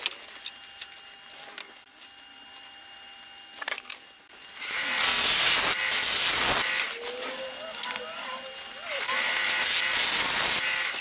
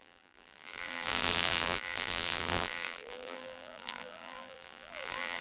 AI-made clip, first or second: second